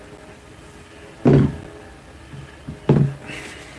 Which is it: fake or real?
real